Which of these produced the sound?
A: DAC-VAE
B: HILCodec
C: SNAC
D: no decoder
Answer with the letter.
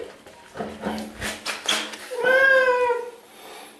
D